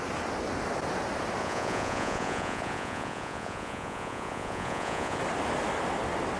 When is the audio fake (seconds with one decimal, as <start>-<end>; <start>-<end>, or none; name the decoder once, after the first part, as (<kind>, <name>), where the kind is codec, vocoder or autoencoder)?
1.4-5.2 (vocoder, Vocos)